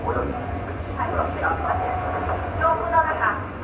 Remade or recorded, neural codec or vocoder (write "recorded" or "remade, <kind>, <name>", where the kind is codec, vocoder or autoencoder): remade, vocoder, Vocos